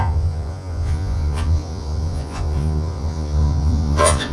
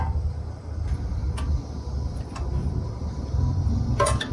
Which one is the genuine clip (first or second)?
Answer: second